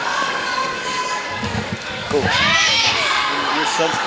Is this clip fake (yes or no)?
yes